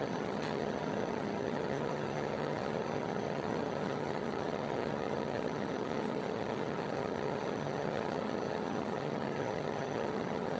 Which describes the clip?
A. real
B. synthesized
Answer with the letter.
B